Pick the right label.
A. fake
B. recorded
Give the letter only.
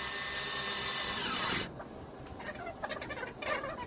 B